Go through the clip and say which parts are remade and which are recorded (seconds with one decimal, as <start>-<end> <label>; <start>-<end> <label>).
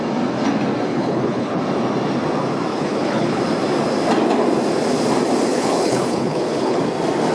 0.0-0.9 recorded; 0.9-1.6 remade; 1.6-2.7 recorded; 2.7-3.4 remade; 3.4-5.5 recorded; 5.5-6.8 remade; 6.8-7.3 recorded